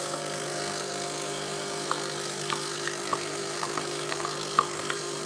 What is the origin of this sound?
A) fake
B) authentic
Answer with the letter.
A